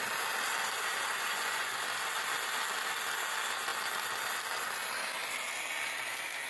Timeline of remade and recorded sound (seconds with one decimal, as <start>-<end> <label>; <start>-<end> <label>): 0.0-1.1 recorded; 1.1-1.8 remade; 1.8-6.5 recorded